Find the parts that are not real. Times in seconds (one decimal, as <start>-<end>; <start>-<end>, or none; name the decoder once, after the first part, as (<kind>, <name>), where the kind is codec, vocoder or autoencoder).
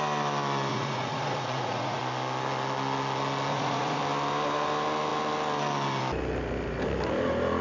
0.7-2.0 (vocoder, Vocos); 3.5-4.0